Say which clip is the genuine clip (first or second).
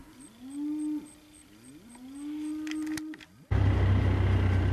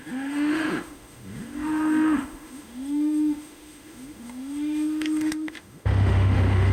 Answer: first